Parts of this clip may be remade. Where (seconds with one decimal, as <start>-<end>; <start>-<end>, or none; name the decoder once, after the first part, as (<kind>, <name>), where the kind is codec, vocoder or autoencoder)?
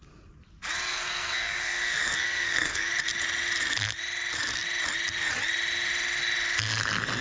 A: 0.9-2.9 (codec, SNAC)